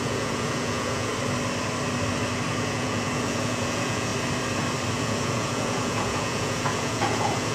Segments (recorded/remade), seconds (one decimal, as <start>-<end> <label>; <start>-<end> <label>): 0.0-1.1 remade; 1.1-2.5 recorded; 2.5-4.1 remade; 4.1-4.9 recorded; 4.9-7.5 remade